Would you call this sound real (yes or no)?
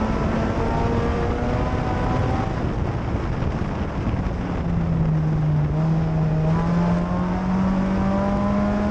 yes